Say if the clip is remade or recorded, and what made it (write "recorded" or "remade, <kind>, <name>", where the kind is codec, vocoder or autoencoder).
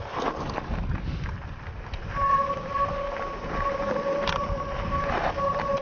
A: recorded